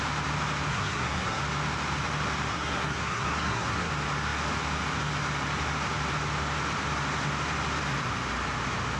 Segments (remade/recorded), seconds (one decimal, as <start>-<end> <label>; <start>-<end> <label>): 0.0-0.7 recorded; 0.7-1.4 remade; 1.4-2.5 recorded; 2.5-3.9 remade; 3.9-9.0 recorded